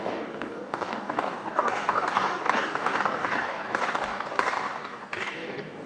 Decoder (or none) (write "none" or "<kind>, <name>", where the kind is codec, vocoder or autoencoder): codec, DAC